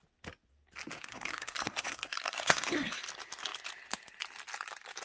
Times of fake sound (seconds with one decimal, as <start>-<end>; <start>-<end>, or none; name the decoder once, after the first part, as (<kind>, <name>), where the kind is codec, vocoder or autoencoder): 1.1-3.0 (codec, SNAC)